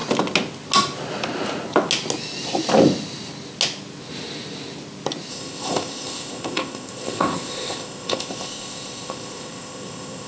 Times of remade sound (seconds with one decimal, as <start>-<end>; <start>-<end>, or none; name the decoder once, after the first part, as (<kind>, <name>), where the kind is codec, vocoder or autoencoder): 5.3-10.3 (codec, ZipCodec)